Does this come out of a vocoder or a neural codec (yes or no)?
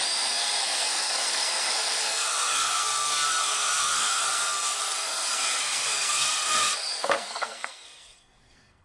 yes